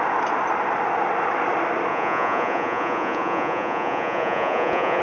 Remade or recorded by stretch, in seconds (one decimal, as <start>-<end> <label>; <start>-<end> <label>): 0.0-1.9 recorded; 1.9-5.0 remade